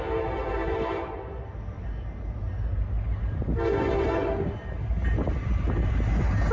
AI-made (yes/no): no